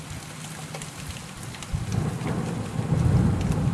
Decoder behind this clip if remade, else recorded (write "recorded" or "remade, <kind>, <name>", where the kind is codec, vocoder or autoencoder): recorded